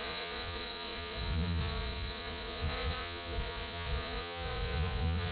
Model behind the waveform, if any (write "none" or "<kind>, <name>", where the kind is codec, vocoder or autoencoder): vocoder, Vocos